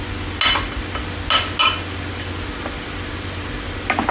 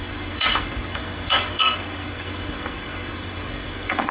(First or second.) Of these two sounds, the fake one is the second